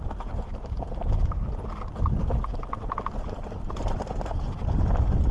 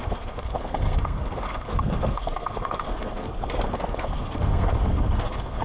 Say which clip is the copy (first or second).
second